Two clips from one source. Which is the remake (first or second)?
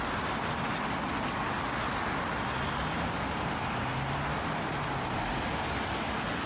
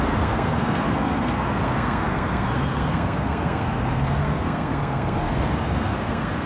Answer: second